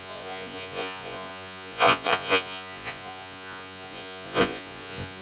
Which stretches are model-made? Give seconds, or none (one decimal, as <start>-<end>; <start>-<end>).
0.0-5.2